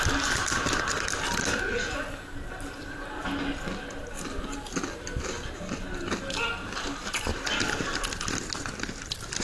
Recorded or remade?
recorded